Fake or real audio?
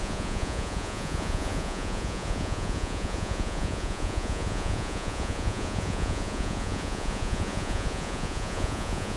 fake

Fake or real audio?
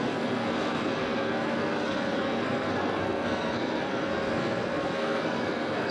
fake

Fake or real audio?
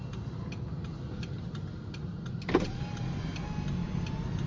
real